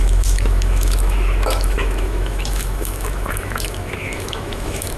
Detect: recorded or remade remade